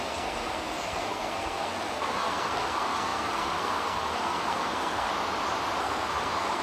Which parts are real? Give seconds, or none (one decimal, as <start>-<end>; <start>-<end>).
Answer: 5.1-5.8